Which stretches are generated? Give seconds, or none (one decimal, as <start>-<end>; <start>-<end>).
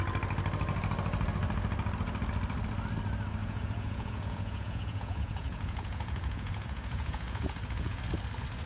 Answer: 3.4-8.0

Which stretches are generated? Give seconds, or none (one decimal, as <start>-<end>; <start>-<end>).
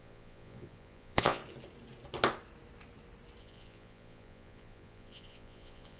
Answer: 0.0-1.4; 3.4-6.0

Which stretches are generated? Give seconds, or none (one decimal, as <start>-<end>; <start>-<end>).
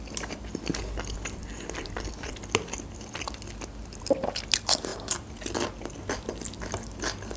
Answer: none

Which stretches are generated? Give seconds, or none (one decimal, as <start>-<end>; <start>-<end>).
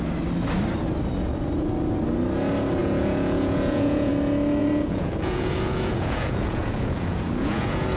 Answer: 2.8-4.1; 4.6-8.0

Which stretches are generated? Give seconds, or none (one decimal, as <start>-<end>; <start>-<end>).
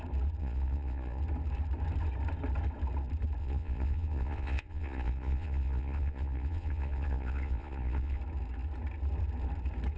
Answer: 0.4-1.2; 3.4-8.2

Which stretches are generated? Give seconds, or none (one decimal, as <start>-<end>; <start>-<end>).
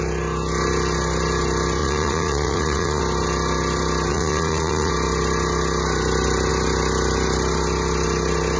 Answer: 1.8-3.0; 4.1-4.9